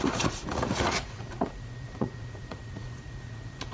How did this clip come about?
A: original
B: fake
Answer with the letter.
B